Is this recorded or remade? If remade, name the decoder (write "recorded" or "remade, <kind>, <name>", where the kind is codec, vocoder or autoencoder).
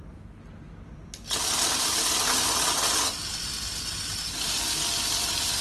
recorded